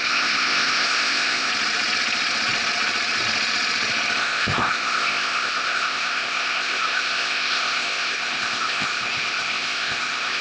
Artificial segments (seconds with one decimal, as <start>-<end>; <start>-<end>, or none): 0.0-1.5; 4.2-10.4